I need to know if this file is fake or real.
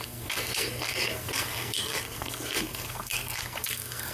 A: fake